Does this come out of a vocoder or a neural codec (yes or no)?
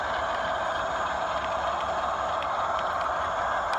no